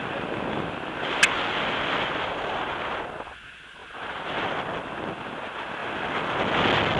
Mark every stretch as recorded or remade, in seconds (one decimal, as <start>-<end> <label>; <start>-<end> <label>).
0.0-7.0 recorded